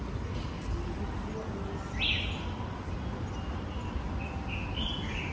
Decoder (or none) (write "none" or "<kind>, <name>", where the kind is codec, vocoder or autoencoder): none